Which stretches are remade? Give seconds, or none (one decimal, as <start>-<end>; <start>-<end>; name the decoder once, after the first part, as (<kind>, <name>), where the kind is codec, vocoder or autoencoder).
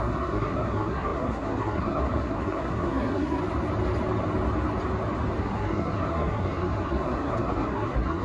0.0-3.4 (codec, SNAC); 5.4-8.2